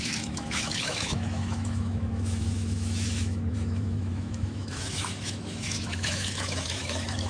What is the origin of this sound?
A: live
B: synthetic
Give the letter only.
B